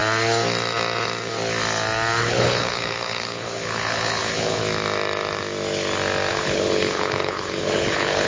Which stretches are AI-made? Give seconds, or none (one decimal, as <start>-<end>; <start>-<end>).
2.2-4.6; 6.3-8.3